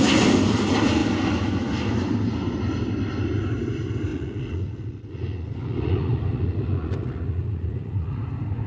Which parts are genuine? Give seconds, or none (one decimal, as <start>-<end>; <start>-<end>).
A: 0.0-4.1; 8.2-8.7

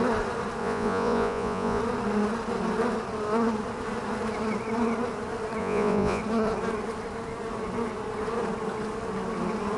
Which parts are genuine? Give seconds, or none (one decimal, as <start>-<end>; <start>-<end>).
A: 0.0-0.6; 1.8-5.6; 6.2-9.8

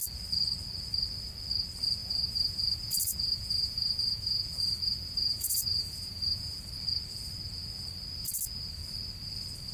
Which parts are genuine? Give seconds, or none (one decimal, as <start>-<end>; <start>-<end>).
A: 0.0-2.0; 6.6-9.7

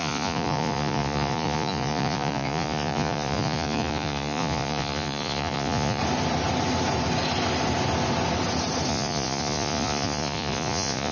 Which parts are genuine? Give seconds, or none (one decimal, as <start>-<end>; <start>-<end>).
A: 6.0-8.9

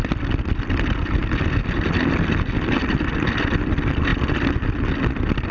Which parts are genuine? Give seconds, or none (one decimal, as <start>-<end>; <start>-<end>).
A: 0.0-5.5

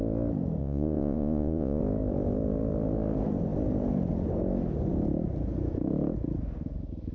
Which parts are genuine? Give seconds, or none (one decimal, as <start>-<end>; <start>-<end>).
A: 0.0-0.6; 1.8-7.1

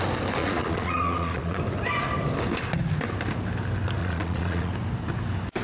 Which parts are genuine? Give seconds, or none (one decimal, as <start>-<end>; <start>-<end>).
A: 0.0-0.4; 1.6-4.0; 4.7-5.6